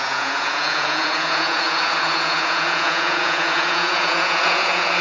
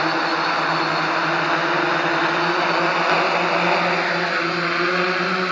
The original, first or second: second